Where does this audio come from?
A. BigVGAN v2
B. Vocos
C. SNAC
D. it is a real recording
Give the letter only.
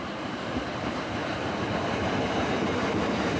A